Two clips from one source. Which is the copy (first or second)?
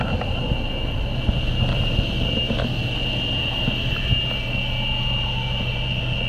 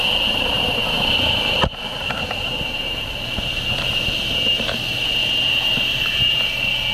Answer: second